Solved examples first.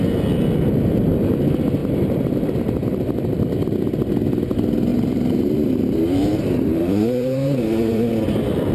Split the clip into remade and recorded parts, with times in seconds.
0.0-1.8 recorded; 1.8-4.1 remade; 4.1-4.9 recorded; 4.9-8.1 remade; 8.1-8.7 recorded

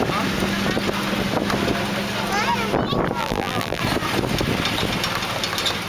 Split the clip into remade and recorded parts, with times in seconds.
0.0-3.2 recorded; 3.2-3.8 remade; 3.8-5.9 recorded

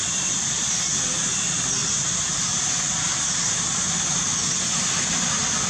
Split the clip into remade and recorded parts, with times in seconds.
0.0-1.8 recorded; 1.8-4.5 remade; 4.5-5.7 recorded